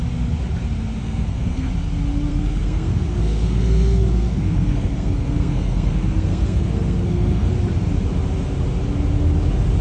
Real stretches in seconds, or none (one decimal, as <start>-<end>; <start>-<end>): 0.0-1.0; 1.7-2.3; 7.5-9.8